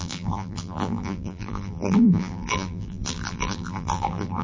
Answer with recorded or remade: remade